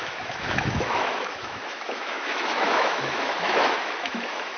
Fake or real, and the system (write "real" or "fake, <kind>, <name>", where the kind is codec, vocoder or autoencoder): fake, autoencoder, DAC-VAE